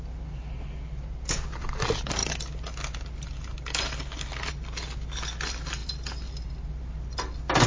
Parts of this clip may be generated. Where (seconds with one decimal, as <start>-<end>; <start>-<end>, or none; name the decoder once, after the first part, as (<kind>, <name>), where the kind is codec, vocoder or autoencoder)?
none